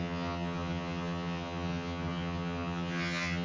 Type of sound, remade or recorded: remade